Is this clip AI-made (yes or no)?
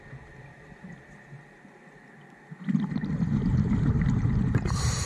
no